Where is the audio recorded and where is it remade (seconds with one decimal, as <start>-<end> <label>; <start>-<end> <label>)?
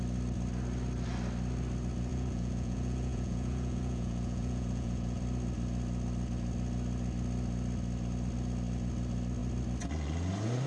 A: 0.0-2.1 recorded; 2.1-5.2 remade; 5.2-10.7 recorded